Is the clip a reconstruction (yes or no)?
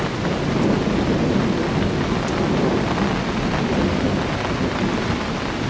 no